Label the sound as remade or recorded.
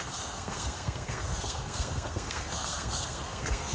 remade